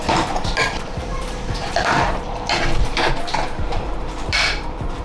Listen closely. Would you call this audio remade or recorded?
remade